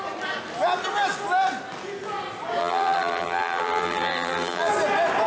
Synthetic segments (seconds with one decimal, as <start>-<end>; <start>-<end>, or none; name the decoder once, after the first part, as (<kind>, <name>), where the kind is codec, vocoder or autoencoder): 2.6-4.7 (vocoder, BigVGAN v2)

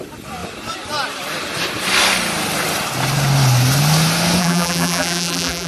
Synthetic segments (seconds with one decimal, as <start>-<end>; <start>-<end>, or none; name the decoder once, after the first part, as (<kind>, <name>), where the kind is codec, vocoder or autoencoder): 4.4-5.7 (vocoder, BigVGAN v2)

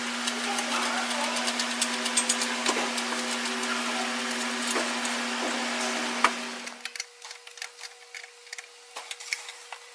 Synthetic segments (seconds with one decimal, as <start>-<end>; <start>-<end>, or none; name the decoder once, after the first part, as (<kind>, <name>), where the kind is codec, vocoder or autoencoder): none

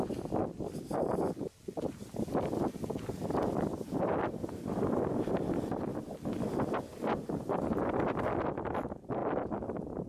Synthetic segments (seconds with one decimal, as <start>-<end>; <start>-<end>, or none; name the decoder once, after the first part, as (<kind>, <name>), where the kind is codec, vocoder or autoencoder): 6.9-7.6 (vocoder, BigVGAN v2)

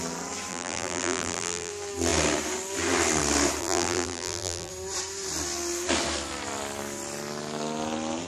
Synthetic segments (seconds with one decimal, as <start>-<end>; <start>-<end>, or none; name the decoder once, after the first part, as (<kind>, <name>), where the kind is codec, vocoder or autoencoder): 0.5-1.7 (vocoder, BigVGAN v2); 3.6-4.7

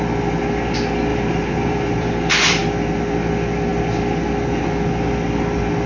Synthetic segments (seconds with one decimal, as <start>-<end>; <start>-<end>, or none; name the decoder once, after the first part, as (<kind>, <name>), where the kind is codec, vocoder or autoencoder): 1.1-2.1 (vocoder, BigVGAN v2)

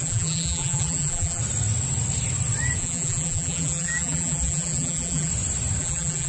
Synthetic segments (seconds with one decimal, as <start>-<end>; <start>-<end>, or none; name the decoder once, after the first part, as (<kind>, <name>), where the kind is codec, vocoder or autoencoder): 0.0-1.4 (vocoder, BigVGAN v2); 2.8-5.3; 5.8-6.3

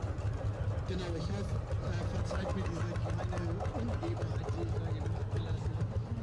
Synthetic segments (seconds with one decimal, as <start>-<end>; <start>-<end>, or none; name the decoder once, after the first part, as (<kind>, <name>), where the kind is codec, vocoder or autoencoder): 5.2-6.2 (vocoder, BigVGAN v2)